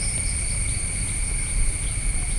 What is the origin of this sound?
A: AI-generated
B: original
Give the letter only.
B